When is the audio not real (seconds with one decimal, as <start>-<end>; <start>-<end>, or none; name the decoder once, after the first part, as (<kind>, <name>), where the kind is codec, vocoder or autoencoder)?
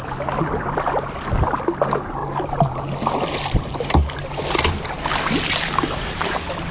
none